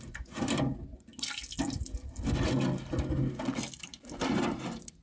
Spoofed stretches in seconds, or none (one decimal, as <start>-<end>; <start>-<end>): 0.0-1.1; 3.7-5.0